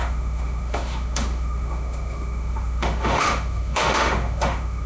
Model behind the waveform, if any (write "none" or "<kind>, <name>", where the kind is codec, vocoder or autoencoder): autoencoder, DAC-VAE